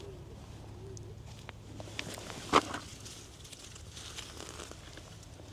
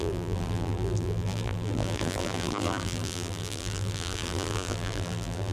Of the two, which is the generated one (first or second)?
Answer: second